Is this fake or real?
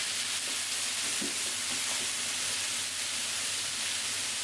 real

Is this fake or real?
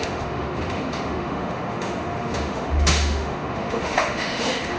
fake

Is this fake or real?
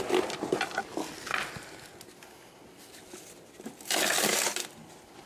real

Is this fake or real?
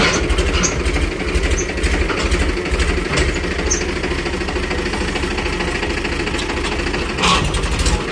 real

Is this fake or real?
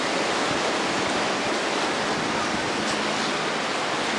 real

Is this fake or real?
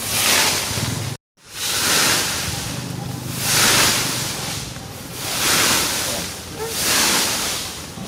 real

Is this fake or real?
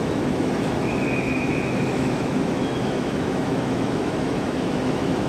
fake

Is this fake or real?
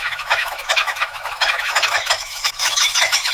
fake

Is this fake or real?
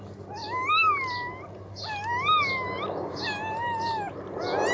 real